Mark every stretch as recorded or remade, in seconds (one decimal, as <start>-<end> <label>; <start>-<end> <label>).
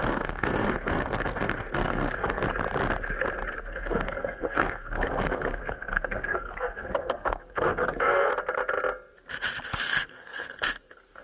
0.0-2.4 remade; 2.4-3.6 recorded; 3.6-8.3 remade; 8.3-9.7 recorded; 9.7-11.2 remade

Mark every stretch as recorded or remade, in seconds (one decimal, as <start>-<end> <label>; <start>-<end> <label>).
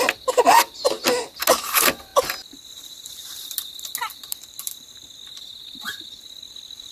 0.0-6.9 recorded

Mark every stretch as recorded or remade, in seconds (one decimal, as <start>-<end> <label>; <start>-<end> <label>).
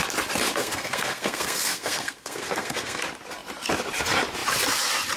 0.0-0.6 recorded; 0.6-3.0 remade; 3.0-5.2 recorded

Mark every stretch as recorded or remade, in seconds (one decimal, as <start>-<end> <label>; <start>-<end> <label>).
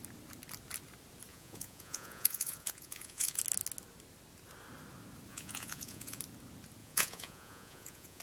0.0-1.3 recorded; 1.3-3.4 remade; 3.4-5.3 recorded; 5.3-6.2 remade; 6.2-6.8 recorded; 6.8-8.2 remade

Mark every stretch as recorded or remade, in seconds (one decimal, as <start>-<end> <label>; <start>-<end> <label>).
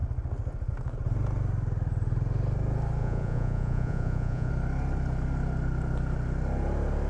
0.0-3.0 recorded; 3.0-4.5 remade; 4.5-7.1 recorded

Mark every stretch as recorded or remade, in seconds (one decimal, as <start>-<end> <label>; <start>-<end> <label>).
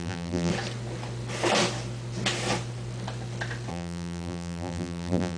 0.0-0.5 remade; 0.5-3.7 recorded; 3.7-5.4 remade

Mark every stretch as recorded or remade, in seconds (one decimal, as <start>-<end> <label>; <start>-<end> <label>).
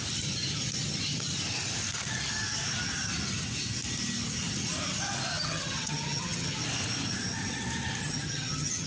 0.0-5.3 recorded; 5.3-6.6 remade; 6.6-8.0 recorded; 8.0-8.9 remade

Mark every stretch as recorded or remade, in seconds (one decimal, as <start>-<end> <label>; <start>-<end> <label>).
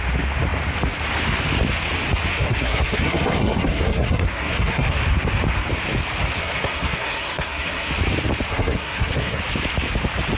0.0-2.3 recorded; 2.3-5.0 remade; 5.0-6.4 recorded; 6.4-7.9 remade; 7.9-8.5 recorded; 8.5-9.4 remade; 9.4-10.4 recorded